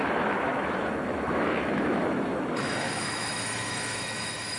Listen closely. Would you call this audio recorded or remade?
remade